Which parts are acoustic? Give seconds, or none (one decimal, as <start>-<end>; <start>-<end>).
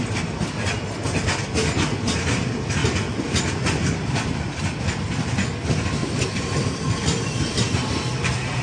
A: 0.0-8.6